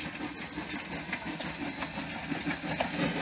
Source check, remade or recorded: recorded